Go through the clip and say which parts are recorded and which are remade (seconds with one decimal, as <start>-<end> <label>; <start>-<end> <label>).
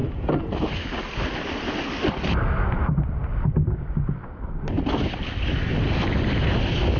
0.0-7.0 recorded